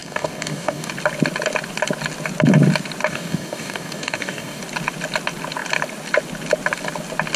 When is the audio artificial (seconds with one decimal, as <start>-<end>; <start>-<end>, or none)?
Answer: 0.0-0.9; 3.1-4.6